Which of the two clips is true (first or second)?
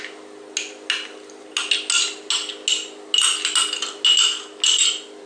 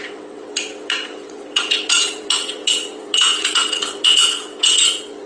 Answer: first